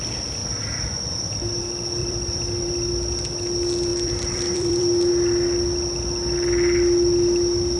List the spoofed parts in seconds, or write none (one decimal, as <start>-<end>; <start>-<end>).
0.4-1.6; 2.0-2.9; 3.9-5.1